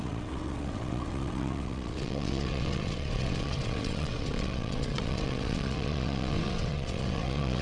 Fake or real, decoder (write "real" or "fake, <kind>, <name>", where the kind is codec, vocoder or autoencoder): fake, vocoder, WaveNeXt